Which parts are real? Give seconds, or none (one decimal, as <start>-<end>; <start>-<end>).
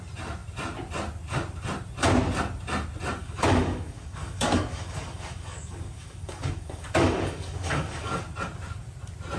0.0-3.2; 8.2-9.4